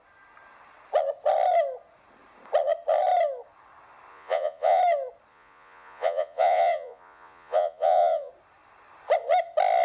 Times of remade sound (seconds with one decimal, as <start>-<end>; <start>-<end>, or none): 4.1-4.8; 5.3-8.3